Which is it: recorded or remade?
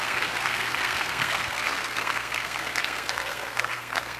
remade